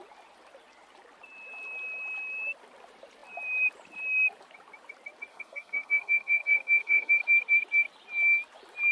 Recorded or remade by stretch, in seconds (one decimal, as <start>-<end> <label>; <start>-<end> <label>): 0.0-5.3 recorded; 5.3-7.1 remade; 7.1-8.9 recorded